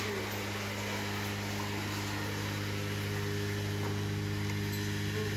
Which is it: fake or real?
real